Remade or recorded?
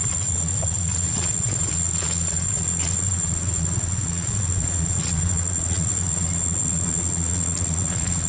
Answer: remade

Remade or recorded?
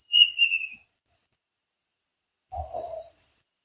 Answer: remade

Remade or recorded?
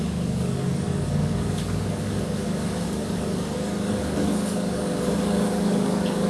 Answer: remade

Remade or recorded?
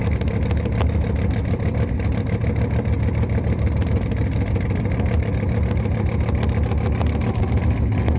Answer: recorded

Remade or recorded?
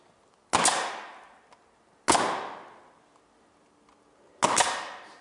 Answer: recorded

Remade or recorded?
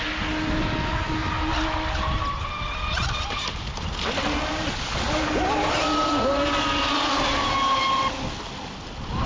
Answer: recorded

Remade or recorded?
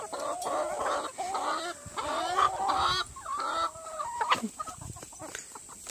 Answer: recorded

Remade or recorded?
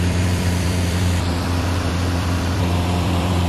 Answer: remade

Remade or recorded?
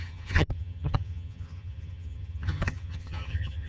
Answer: remade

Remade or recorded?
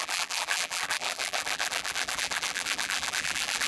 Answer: remade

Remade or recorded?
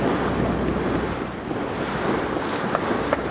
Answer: recorded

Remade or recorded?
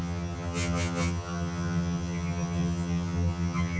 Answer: remade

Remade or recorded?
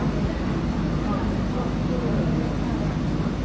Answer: recorded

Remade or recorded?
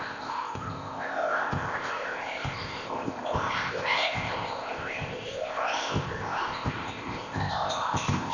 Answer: remade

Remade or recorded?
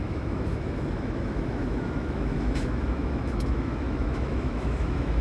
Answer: remade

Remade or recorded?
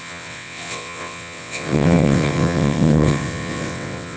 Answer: remade